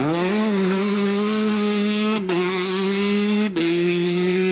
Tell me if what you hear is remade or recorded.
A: remade